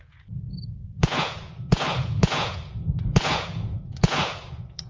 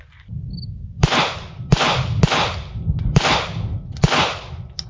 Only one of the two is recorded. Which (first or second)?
second